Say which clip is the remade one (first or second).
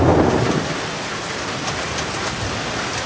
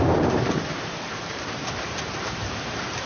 second